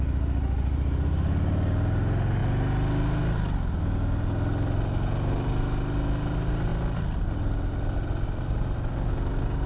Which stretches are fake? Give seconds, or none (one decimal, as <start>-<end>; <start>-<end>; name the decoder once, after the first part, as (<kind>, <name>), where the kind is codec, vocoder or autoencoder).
none